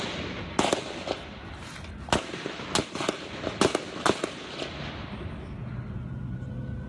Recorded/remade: recorded